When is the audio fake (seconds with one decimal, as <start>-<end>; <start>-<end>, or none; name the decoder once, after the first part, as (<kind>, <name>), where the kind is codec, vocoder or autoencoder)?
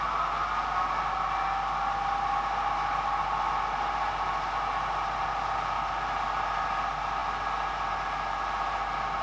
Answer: none